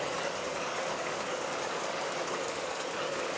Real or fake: fake